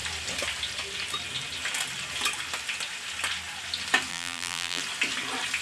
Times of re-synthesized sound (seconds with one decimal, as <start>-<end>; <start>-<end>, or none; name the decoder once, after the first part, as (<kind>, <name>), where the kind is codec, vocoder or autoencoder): 4.1-4.8 (vocoder, BigVGAN v2)